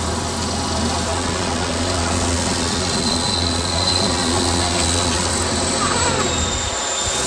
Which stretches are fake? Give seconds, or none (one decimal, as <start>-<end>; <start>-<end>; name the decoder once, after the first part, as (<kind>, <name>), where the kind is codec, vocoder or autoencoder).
1.1-5.3 (vocoder, Vocos)